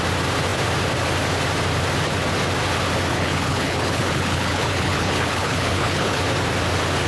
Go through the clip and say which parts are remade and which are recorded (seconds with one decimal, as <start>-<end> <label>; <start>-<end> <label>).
0.0-3.1 recorded; 3.1-6.2 remade; 6.2-7.1 recorded